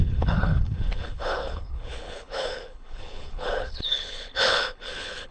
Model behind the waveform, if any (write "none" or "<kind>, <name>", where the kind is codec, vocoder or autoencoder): codec, HILCodec